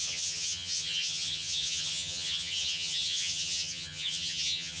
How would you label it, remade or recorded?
remade